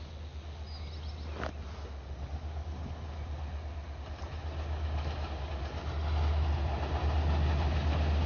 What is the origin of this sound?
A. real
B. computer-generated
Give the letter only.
A